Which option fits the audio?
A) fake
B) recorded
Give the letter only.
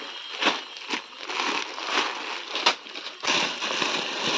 B